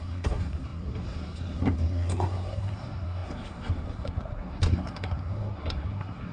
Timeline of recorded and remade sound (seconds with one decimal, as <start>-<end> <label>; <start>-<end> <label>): 0.0-6.3 remade